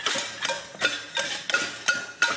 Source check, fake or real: real